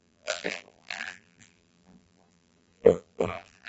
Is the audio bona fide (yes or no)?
no